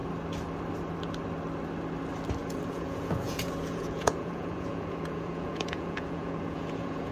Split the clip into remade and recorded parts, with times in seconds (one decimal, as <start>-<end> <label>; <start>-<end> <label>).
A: 0.0-2.4 recorded; 2.4-7.1 remade